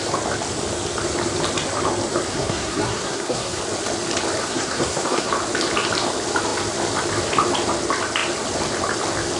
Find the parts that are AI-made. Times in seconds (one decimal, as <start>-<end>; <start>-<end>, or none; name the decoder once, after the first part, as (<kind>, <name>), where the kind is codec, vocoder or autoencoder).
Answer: 2.3-3.6 (codec, SNAC); 4.4-5.3